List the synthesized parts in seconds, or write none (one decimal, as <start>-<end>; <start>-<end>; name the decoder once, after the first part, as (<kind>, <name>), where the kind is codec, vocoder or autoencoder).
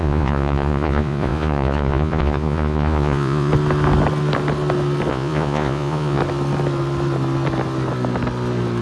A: 0.0-3.5 (vocoder, Vocos); 5.1-6.2